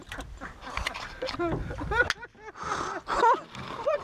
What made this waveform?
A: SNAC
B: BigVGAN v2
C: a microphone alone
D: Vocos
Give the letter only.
C